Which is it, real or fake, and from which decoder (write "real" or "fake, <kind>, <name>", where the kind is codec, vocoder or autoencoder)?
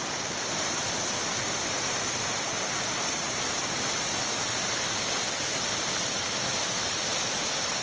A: fake, vocoder, BigVGAN v2